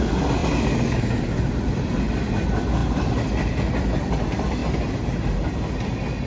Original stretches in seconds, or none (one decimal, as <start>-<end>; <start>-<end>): 0.0-6.3